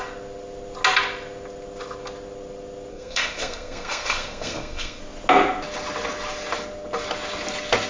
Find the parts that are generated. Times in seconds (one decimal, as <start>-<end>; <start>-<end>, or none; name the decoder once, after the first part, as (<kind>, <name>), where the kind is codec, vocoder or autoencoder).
2.9-5.0 (codec, SNAC)